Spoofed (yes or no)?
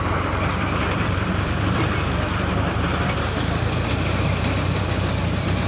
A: yes